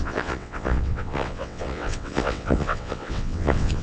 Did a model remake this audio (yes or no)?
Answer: yes